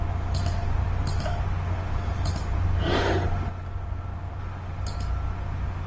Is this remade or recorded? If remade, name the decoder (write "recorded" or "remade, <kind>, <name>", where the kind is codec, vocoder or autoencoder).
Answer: recorded